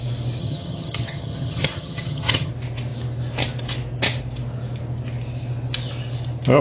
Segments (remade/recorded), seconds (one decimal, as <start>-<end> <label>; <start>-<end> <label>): 0.0-0.4 recorded; 0.4-2.5 remade; 2.5-6.6 recorded